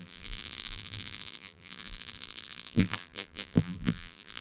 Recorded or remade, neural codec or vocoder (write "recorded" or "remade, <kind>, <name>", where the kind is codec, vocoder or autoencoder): remade, vocoder, BigVGAN v2